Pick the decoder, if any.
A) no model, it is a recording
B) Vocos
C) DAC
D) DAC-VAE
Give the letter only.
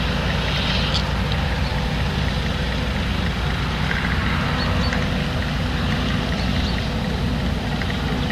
A